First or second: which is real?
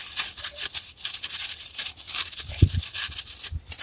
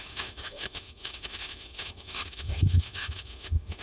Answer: first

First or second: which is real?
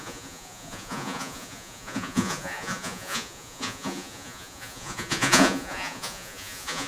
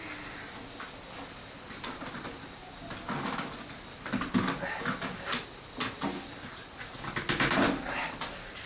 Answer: second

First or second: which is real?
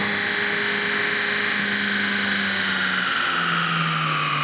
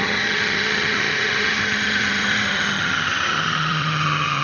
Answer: first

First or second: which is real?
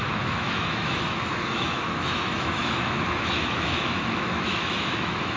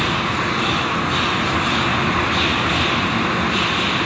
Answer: second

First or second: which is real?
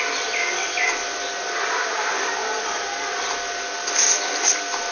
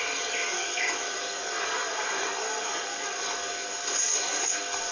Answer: first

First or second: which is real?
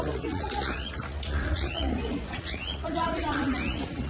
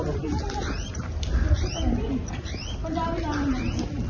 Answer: second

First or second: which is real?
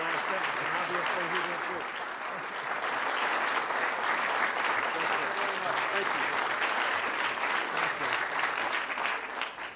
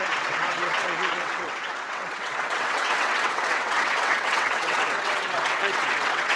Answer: first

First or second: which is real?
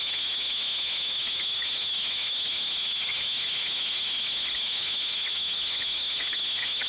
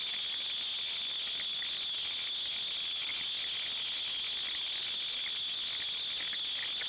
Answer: second